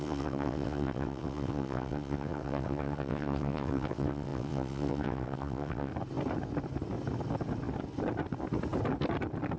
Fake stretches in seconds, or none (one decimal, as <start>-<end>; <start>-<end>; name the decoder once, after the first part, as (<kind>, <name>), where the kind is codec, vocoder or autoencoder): 0.0-5.9 (vocoder, WaveNeXt)

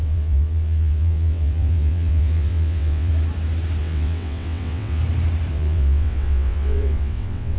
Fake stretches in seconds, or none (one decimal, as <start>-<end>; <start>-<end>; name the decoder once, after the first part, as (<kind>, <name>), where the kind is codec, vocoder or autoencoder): 0.0-3.1 (vocoder, WaveNeXt); 3.8-5.0; 5.5-7.6